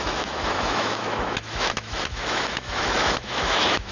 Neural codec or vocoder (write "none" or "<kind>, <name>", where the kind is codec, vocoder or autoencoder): autoencoder, DAC-VAE